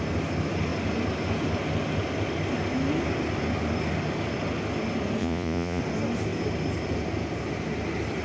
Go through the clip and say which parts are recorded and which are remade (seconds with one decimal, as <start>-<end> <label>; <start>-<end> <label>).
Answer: 0.0-5.2 recorded; 5.2-5.8 remade; 5.8-8.2 recorded